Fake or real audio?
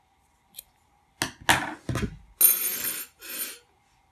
real